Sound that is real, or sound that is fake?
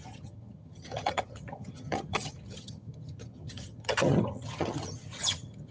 fake